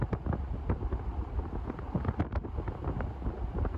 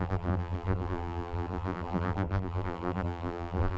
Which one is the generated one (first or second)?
second